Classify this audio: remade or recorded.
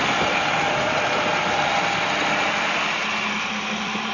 recorded